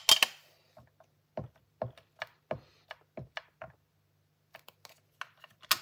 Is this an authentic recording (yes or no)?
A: yes